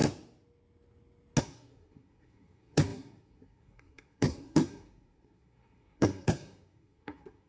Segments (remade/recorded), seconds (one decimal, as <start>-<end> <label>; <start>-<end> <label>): 0.0-1.4 recorded; 1.4-7.5 remade